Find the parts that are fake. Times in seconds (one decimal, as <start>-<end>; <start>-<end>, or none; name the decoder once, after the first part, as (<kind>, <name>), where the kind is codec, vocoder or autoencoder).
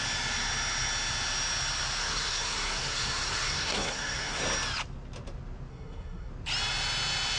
2.0-4.4 (codec, SNAC); 5.7-6.3